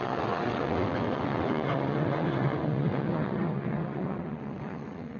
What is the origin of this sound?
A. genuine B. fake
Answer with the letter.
B